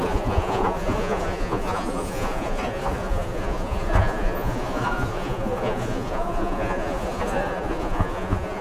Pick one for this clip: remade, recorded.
remade